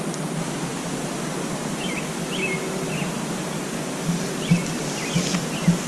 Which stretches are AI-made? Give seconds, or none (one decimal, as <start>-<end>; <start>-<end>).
none